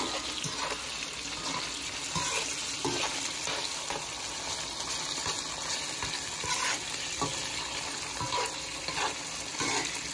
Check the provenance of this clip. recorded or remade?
recorded